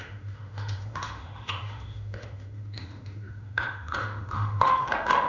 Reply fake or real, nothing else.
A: fake